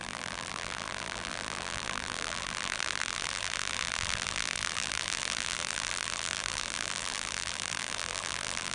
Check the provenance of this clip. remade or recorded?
remade